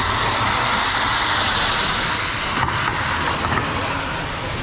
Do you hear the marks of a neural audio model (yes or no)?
no